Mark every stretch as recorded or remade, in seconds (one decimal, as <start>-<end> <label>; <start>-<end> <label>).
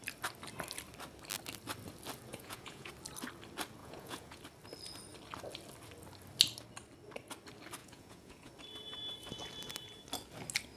0.0-2.3 recorded; 2.3-2.9 remade; 2.9-3.8 recorded; 3.8-4.4 remade; 4.4-7.8 recorded; 7.8-8.5 remade; 8.5-10.8 recorded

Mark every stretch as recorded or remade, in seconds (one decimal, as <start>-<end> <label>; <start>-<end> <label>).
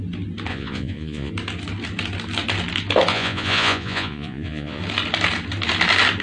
0.0-0.5 recorded; 0.5-1.3 remade; 1.3-3.1 recorded; 3.1-4.8 remade; 4.8-6.2 recorded